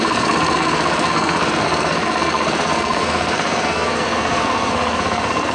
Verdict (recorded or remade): remade